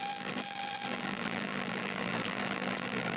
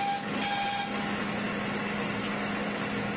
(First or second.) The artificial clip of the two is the first